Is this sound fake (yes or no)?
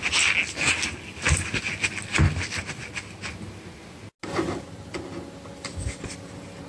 no